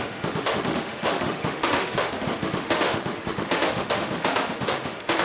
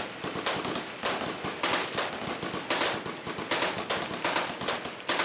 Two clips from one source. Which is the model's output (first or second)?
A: first